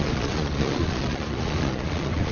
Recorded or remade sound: remade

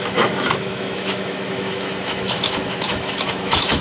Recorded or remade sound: remade